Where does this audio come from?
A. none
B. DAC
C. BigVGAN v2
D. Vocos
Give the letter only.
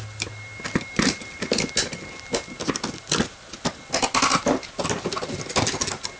A